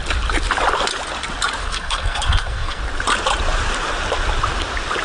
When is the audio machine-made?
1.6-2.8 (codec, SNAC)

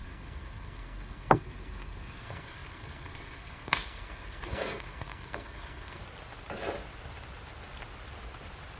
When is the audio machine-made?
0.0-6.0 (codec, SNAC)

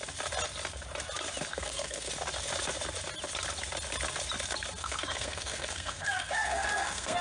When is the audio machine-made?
1.5-2.1 (codec, SNAC); 4.8-7.2

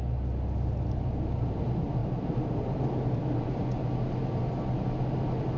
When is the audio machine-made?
none